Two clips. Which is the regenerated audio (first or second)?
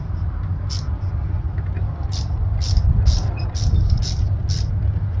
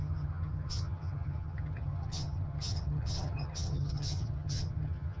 second